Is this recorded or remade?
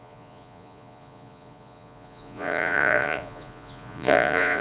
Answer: remade